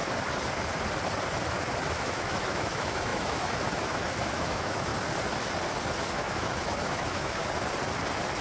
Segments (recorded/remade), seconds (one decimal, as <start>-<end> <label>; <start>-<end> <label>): 0.0-1.8 recorded; 1.8-4.9 remade; 4.9-6.1 recorded; 6.1-7.4 remade; 7.4-8.4 recorded